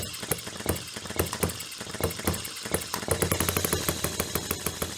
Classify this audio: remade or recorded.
recorded